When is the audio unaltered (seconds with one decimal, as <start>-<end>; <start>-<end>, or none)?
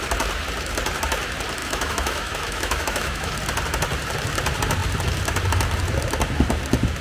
0.0-1.6; 3.3-7.0